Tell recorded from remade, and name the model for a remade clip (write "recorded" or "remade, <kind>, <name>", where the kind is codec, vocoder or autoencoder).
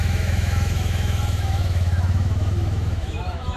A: remade, autoencoder, DAC-VAE